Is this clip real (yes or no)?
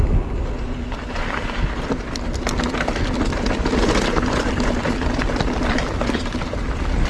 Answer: yes